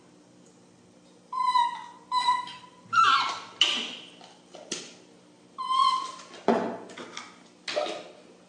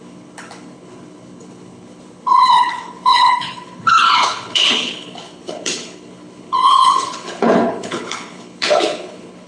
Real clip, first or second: first